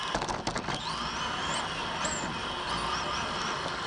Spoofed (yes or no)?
no